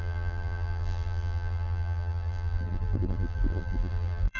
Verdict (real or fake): fake